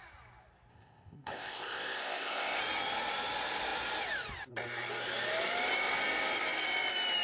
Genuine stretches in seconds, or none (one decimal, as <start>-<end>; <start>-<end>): 0.0-0.7; 2.6-7.2